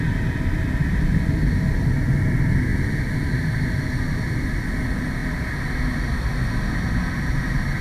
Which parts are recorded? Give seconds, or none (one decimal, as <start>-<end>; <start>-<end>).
0.0-7.8